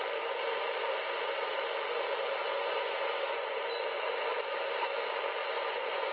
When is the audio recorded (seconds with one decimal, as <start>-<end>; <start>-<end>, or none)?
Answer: 0.0-2.4; 4.3-5.4